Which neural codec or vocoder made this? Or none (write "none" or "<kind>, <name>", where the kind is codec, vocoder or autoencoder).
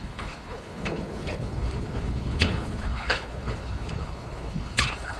codec, HILCodec